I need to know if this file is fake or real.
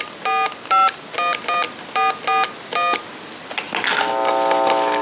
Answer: real